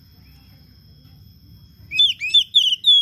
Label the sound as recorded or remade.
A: recorded